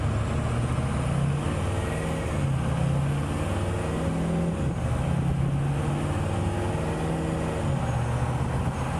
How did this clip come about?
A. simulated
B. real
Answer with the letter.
B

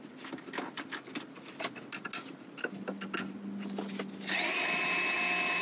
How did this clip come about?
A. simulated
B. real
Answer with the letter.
B